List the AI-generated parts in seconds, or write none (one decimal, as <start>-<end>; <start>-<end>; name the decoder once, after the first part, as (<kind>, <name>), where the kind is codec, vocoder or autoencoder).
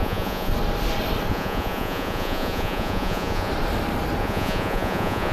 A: 0.0-0.5 (vocoder, Vocos); 1.3-3.5; 4.2-5.3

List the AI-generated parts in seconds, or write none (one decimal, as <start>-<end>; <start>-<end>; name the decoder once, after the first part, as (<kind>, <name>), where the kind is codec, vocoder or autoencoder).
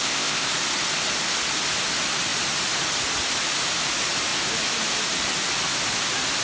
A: 0.0-0.5 (codec, ZipCodec)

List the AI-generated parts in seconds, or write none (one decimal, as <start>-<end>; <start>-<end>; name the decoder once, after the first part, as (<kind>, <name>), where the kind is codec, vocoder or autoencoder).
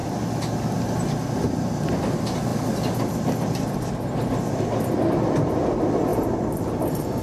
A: 2.5-5.5 (vocoder, BigVGAN v2); 6.1-7.2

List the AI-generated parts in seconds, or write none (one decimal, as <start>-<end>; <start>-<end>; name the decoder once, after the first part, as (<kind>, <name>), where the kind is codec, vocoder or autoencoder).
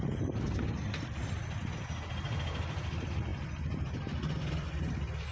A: none